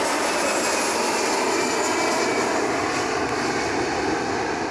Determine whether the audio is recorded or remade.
recorded